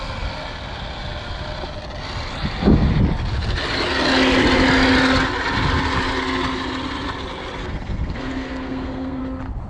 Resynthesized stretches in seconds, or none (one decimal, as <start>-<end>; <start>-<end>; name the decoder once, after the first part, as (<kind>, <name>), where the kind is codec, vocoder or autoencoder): 7.6-9.2 (codec, SNAC)